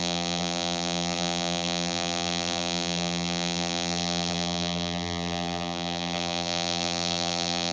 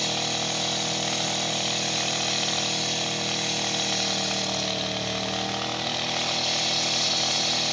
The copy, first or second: first